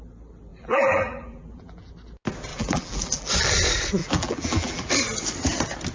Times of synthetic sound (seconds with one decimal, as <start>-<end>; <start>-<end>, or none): 0.5-1.9; 2.5-3.3; 4.0-4.9